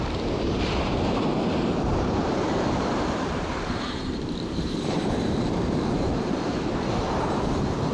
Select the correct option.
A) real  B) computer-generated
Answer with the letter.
B